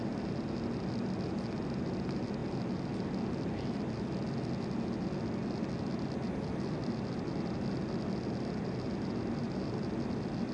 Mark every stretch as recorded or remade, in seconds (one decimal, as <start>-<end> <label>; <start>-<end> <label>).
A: 0.0-10.5 recorded